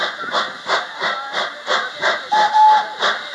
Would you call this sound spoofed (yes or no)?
no